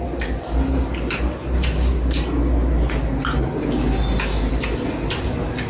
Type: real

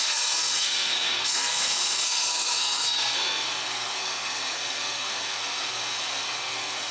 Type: fake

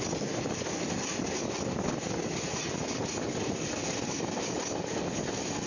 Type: real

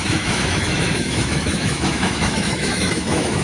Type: fake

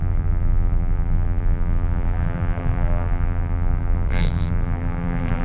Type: fake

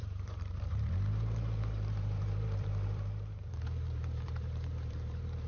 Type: fake